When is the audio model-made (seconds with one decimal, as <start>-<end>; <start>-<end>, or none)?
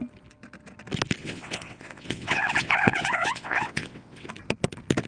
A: 1.2-4.3